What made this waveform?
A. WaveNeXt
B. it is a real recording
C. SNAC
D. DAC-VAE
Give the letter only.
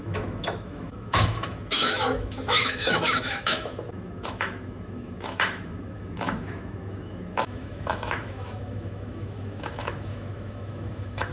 D